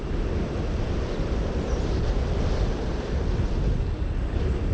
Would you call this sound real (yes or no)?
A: yes